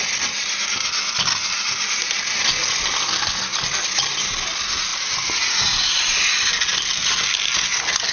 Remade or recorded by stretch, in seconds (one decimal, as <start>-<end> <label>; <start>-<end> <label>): 0.0-8.1 recorded